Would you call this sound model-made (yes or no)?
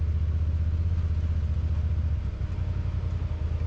no